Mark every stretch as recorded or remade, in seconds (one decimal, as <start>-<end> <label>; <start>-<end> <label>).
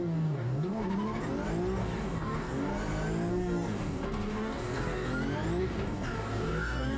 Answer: 0.0-0.8 remade; 0.8-1.8 recorded; 1.8-2.7 remade; 2.7-3.3 recorded; 3.3-5.1 remade; 5.1-5.6 recorded; 5.6-7.0 remade